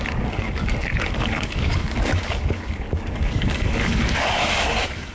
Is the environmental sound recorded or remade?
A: remade